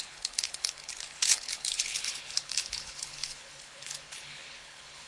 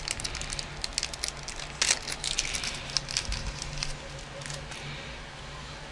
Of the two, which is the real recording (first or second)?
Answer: second